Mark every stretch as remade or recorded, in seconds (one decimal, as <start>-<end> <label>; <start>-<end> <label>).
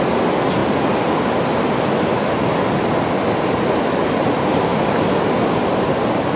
0.0-6.4 recorded